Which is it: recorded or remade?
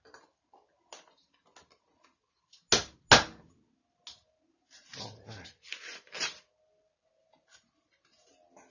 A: recorded